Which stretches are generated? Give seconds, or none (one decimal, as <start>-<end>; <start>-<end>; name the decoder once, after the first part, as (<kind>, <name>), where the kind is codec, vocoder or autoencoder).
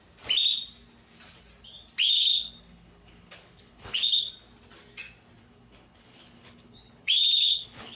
2.0-4.3 (codec, HILCodec); 5.4-8.0